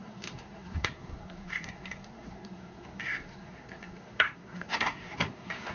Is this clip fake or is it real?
fake